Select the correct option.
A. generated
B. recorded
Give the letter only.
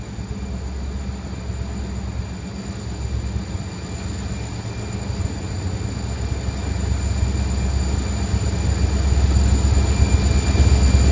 B